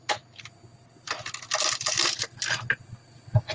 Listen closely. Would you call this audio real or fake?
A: real